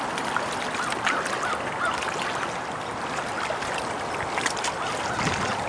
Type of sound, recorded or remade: recorded